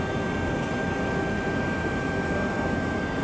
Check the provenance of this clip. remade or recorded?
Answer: recorded